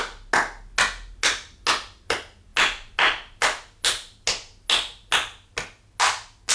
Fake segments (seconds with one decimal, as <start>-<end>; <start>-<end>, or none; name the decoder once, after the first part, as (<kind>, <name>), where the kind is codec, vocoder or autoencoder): none